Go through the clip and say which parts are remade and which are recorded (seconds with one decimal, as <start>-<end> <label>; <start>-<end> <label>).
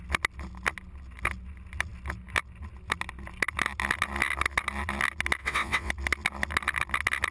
0.0-5.4 recorded; 5.4-5.9 remade; 5.9-7.3 recorded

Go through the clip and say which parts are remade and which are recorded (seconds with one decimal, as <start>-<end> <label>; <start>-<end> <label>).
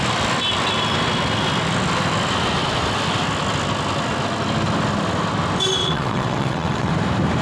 0.0-5.8 recorded; 5.8-6.9 remade; 6.9-7.4 recorded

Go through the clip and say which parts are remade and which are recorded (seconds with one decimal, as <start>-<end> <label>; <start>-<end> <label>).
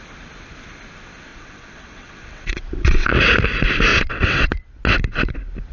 0.0-1.3 recorded; 1.3-3.1 remade; 3.1-3.9 recorded; 3.9-4.6 remade; 4.6-5.7 recorded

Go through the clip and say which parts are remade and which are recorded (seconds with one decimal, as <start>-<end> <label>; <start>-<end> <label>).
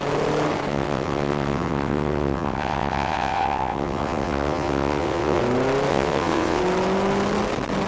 0.0-0.7 recorded; 0.7-5.4 remade; 5.4-5.9 recorded; 5.9-6.6 remade; 6.6-7.9 recorded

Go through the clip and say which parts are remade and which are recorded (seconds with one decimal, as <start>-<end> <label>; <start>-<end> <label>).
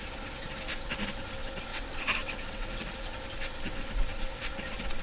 0.0-1.7 recorded; 1.7-3.0 remade; 3.0-5.0 recorded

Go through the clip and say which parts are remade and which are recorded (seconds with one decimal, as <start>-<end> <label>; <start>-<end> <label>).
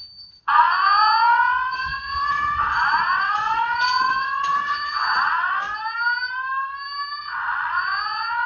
0.0-5.6 remade; 5.6-7.2 recorded; 7.2-8.5 remade